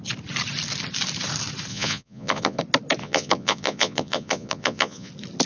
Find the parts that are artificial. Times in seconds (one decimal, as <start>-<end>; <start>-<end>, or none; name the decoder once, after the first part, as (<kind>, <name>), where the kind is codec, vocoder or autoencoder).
1.7-2.6 (vocoder, Vocos); 3.0-5.1